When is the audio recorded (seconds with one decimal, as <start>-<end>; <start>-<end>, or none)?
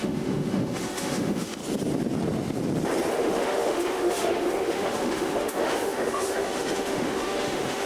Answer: 1.6-3.1